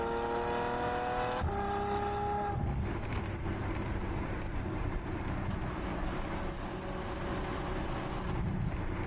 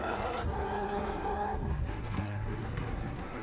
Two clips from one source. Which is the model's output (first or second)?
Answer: second